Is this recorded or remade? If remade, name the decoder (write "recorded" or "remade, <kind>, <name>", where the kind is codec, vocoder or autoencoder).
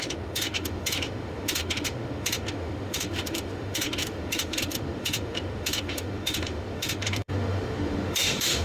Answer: remade, autoencoder, DAC-VAE